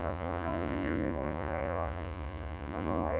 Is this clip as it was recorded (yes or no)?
no